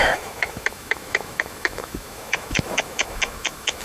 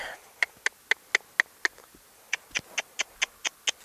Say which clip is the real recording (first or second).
second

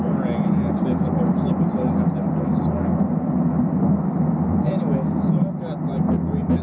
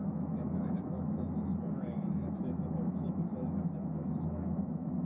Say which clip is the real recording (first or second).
first